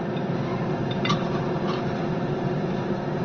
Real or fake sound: real